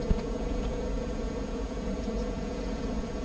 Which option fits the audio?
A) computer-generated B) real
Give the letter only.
A